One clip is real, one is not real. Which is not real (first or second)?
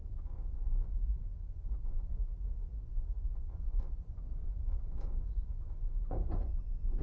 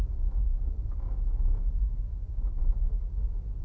first